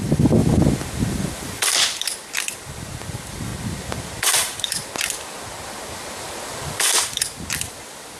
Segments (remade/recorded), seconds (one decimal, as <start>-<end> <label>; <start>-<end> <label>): 0.0-3.5 remade; 3.5-4.2 recorded; 4.2-4.8 remade; 4.8-6.7 recorded; 6.7-8.2 remade